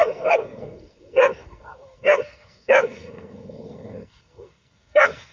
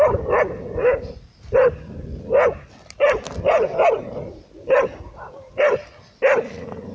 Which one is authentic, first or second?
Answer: second